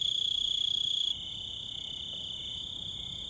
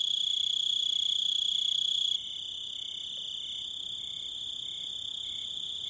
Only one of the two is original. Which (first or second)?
second